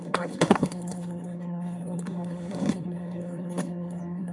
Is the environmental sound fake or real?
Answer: fake